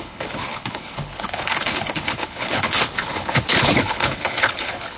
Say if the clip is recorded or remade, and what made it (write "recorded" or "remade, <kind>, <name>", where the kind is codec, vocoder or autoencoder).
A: remade, codec, HILCodec